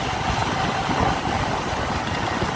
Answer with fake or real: real